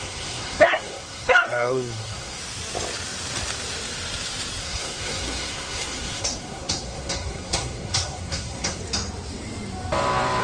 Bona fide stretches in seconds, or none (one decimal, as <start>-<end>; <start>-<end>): 2.4-4.6; 8.8-10.4